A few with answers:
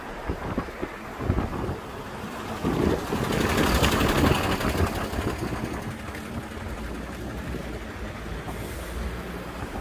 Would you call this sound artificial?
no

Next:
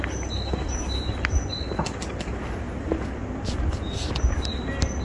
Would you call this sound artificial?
no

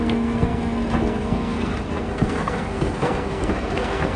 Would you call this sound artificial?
yes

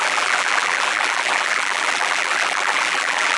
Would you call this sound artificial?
yes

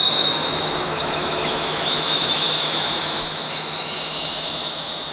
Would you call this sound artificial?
yes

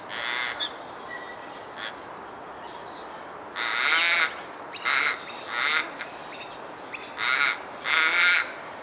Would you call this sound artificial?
no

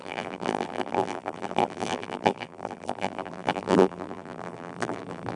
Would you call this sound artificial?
yes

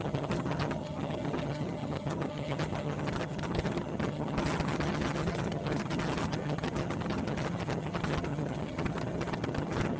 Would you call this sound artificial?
yes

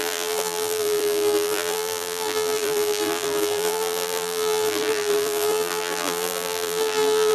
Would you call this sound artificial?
yes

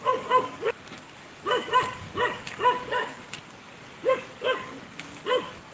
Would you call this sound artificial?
yes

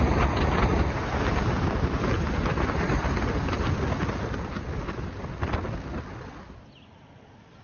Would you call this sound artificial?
no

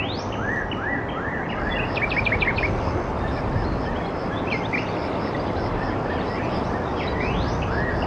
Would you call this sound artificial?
no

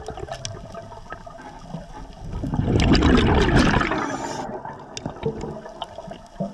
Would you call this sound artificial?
no